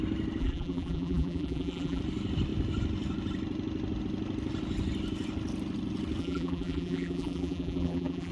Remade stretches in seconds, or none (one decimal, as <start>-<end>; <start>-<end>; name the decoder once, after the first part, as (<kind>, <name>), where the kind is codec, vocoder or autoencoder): 0.4-2.0 (vocoder, BigVGAN v2); 6.2-8.3